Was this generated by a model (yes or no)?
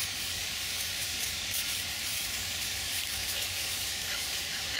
yes